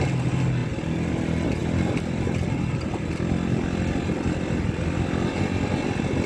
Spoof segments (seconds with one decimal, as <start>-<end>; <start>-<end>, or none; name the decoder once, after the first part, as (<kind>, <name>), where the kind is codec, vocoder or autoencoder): none